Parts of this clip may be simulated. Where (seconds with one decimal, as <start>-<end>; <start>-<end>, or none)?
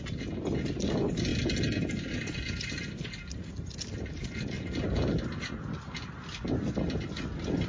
none